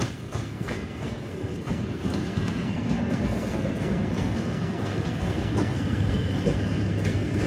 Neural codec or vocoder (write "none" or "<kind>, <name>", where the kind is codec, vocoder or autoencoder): codec, SNAC